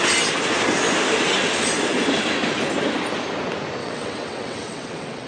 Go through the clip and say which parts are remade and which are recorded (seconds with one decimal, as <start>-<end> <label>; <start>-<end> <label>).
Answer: 0.0-3.8 recorded; 3.8-5.3 remade